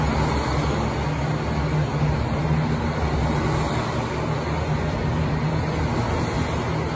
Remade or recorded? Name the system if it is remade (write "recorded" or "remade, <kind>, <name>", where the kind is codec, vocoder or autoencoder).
recorded